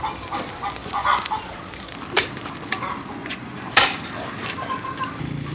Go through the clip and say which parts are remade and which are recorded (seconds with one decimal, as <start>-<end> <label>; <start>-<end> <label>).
0.0-0.8 recorded; 0.8-1.5 remade; 1.5-3.2 recorded; 3.2-3.7 remade; 3.7-5.5 recorded